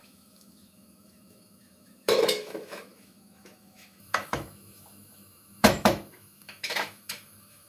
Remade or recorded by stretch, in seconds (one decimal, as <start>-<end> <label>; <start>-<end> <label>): 0.0-7.7 remade